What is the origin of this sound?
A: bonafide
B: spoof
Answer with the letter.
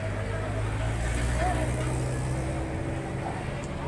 A